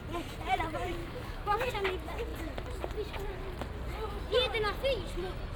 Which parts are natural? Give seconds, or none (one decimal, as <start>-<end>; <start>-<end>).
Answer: 0.0-1.0; 1.7-5.6